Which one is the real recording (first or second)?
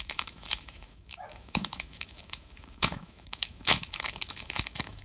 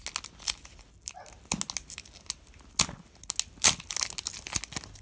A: second